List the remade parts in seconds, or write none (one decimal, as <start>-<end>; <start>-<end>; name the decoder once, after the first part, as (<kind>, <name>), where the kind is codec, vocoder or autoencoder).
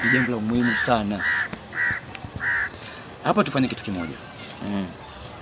none